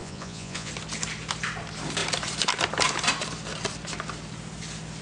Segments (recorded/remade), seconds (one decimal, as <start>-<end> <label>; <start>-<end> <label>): 0.0-0.7 remade; 0.7-5.0 recorded